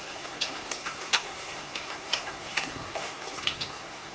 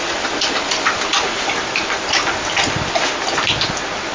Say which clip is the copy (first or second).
first